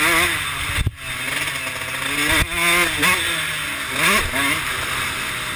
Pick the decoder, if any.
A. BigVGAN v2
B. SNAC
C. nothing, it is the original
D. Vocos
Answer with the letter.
C